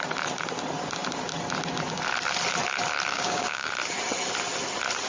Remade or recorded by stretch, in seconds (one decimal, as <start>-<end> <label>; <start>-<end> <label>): 0.0-3.1 recorded; 3.1-3.7 remade; 3.7-5.1 recorded